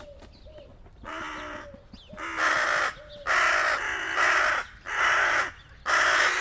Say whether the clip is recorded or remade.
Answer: recorded